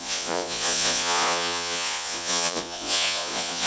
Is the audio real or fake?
fake